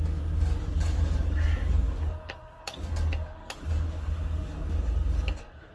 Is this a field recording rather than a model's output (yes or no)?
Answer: no